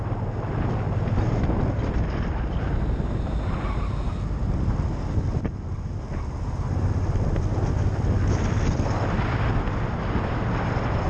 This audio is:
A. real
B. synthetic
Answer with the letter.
A